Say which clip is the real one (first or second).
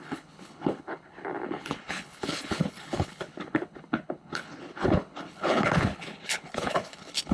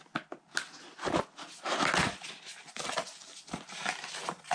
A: second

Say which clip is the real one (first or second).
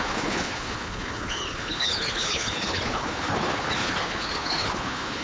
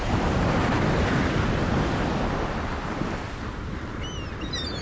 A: second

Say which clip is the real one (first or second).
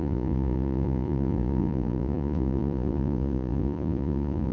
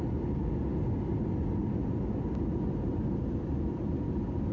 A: second